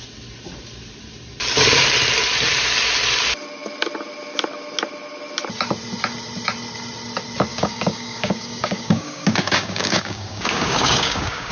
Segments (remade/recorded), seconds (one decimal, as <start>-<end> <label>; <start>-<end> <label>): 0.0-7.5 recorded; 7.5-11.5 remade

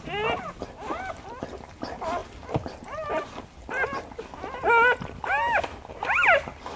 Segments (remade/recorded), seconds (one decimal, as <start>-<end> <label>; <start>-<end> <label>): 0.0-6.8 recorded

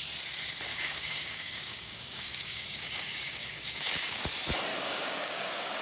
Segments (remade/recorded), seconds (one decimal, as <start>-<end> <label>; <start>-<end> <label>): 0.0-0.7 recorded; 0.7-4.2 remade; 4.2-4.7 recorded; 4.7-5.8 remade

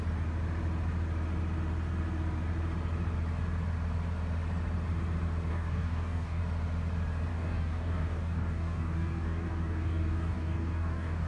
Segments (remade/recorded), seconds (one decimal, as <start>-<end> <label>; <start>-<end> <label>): 0.0-5.5 recorded; 5.5-6.4 remade; 6.4-7.3 recorded; 7.3-11.3 remade

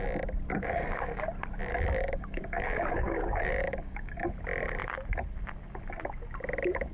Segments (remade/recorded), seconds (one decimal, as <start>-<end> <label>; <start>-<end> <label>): 0.0-0.5 recorded; 0.5-1.2 remade; 1.2-1.7 recorded; 1.7-4.3 remade; 4.3-6.9 recorded

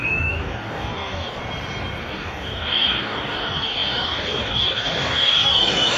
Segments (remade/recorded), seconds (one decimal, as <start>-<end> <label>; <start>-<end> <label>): 0.0-1.4 remade; 1.4-2.0 recorded; 2.0-6.0 remade

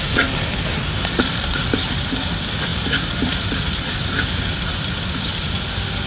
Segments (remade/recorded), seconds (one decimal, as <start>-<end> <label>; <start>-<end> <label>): 0.0-6.1 recorded